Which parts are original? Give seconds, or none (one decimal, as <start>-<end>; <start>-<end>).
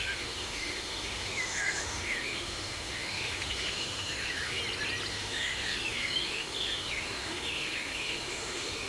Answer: 4.6-5.1